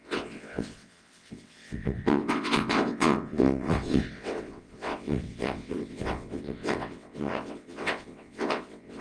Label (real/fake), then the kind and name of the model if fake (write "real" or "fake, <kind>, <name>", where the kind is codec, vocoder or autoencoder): fake, vocoder, WaveNeXt